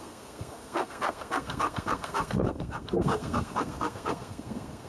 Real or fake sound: fake